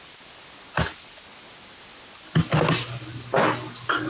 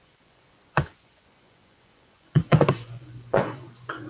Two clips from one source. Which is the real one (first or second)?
first